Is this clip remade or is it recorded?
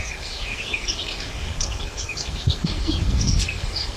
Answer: remade